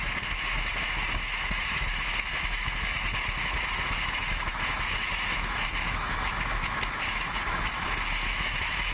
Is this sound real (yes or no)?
no